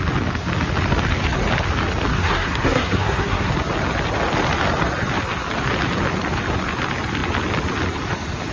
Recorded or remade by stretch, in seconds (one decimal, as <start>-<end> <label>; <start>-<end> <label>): 0.0-2.1 recorded; 2.1-3.5 remade; 3.5-8.5 recorded